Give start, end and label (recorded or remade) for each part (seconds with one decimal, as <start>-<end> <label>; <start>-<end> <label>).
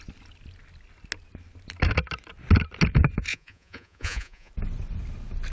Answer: 0.0-3.3 recorded; 3.3-4.5 remade; 4.5-5.5 recorded